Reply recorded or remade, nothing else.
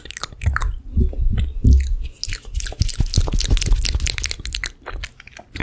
recorded